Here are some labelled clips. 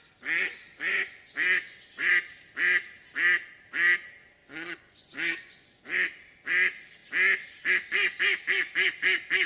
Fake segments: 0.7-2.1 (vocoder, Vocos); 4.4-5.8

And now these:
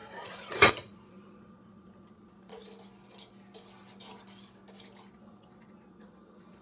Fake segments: 0.0-2.5 (vocoder, Vocos); 5.1-6.6

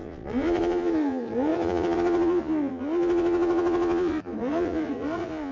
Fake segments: 0.0-5.5 (vocoder, Vocos)

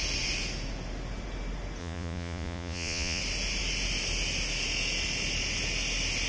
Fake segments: 1.8-3.2 (vocoder, Vocos)

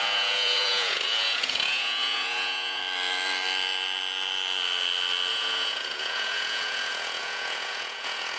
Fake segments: 0.0-2.8 (vocoder, Vocos); 5.3-8.4

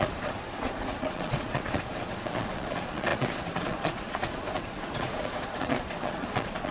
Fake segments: 0.0-6.7 (vocoder, Vocos)